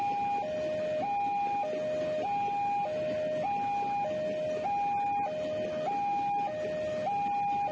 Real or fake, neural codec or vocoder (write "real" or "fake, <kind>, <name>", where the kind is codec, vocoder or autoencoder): real